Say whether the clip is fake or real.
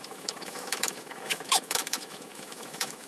fake